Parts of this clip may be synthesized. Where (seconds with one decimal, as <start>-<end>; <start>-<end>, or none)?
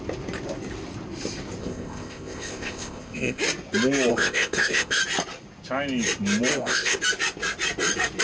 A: 1.6-3.4; 4.1-5.0; 6.5-7.0